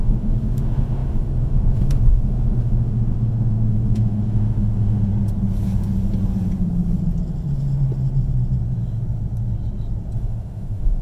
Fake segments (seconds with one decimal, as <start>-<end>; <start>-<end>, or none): 0.0-5.1; 10.2-11.0